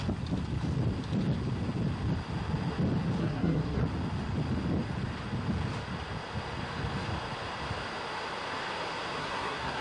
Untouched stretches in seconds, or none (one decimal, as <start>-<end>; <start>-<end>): 0.0-3.2; 3.8-9.2